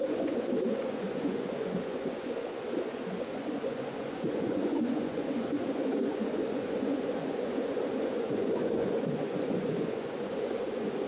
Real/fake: fake